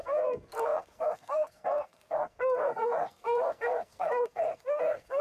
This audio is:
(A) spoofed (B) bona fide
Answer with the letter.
A